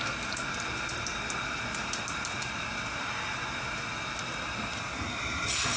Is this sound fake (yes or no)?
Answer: no